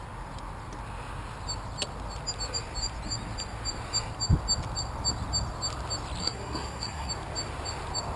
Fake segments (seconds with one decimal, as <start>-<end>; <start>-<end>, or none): 6.2-7.1